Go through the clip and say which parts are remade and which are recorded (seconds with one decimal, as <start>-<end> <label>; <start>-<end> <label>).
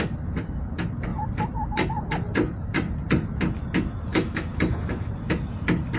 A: 0.0-4.1 recorded; 4.1-5.1 remade; 5.1-6.0 recorded